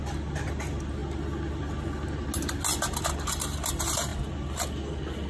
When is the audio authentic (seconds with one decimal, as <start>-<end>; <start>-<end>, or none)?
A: 0.0-5.3